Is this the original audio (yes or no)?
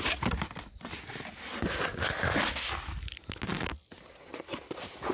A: yes